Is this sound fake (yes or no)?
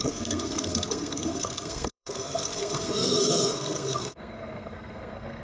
yes